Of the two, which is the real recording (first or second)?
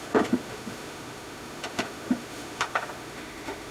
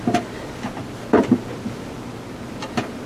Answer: second